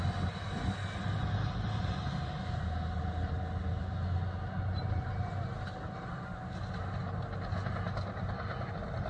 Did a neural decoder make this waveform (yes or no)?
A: no